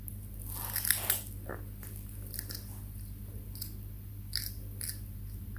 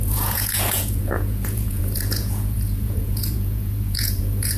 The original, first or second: first